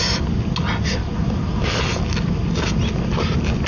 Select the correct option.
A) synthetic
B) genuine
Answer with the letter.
B